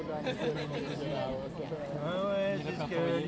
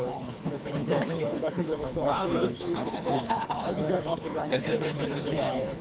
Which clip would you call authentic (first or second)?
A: first